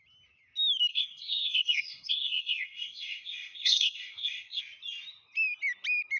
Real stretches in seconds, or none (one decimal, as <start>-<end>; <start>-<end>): 0.0-0.9; 4.6-6.2